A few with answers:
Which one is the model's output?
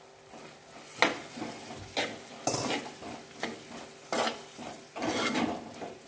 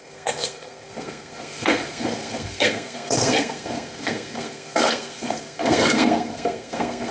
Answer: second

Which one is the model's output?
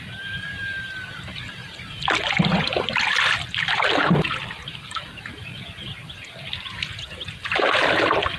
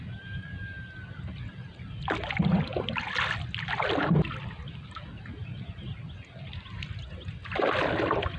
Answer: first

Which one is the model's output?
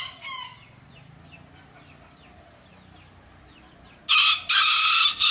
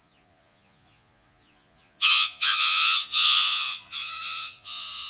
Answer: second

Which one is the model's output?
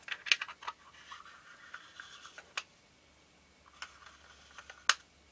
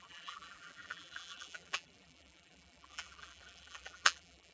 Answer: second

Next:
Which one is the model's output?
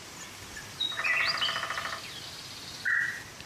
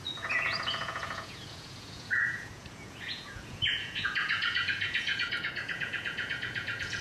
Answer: second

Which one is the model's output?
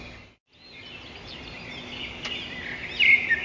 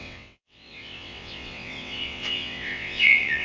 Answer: second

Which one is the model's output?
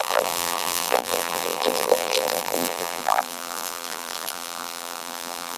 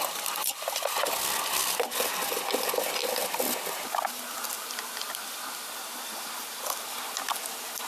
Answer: first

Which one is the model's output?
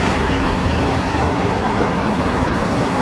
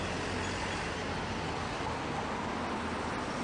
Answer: first